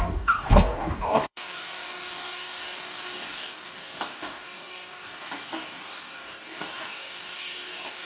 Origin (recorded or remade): remade